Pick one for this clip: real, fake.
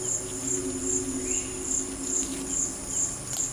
real